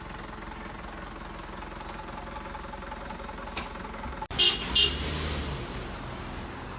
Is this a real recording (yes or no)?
yes